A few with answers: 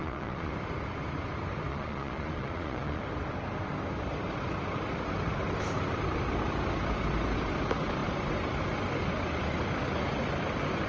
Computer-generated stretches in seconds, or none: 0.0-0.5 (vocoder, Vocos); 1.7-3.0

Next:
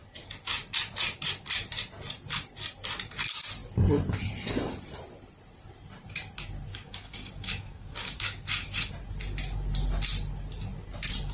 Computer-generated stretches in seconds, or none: 6.7-8.9 (codec, DAC)

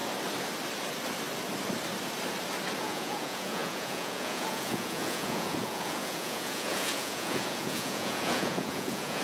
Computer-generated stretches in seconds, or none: 2.8-9.2 (vocoder, Vocos)

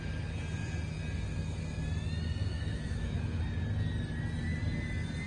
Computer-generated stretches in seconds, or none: 2.5-3.4 (autoencoder, DAC-VAE)

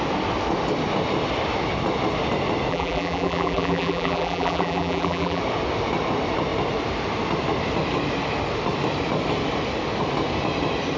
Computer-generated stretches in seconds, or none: 2.7-5.4 (vocoder, BigVGAN v2)

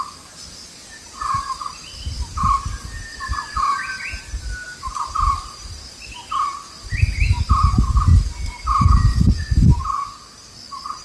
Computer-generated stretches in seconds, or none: 3.1-3.6 (vocoder, Vocos); 9.1-9.8

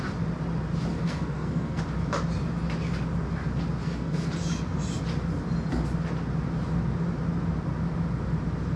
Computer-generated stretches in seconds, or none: 0.9-1.8 (codec, SNAC); 3.8-4.3